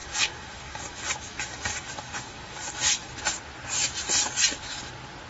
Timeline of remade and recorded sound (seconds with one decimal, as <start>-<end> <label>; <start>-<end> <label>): 0.0-3.2 remade; 3.2-5.3 recorded